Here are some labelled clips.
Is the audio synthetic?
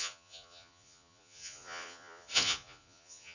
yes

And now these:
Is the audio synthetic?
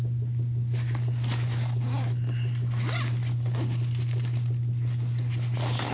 no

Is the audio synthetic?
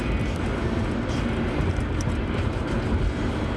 no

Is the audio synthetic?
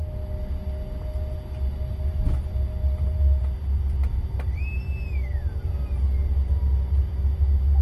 no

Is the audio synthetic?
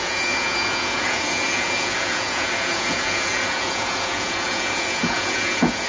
yes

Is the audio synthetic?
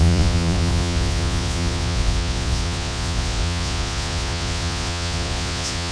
yes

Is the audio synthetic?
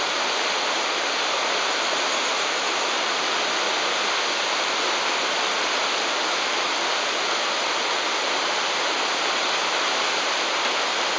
no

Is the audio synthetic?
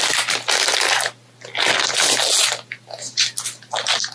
no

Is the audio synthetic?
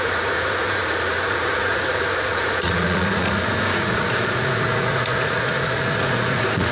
yes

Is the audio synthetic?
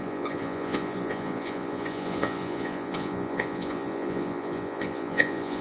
yes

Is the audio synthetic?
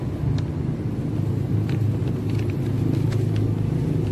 no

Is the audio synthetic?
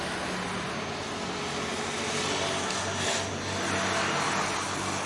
no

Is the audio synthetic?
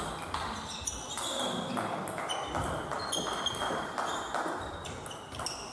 no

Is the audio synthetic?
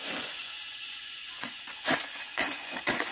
yes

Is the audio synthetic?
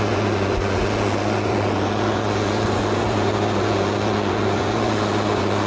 yes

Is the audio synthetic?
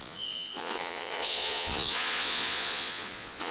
yes